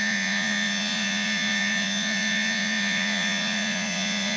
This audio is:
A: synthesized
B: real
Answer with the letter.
A